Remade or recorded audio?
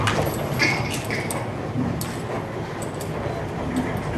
recorded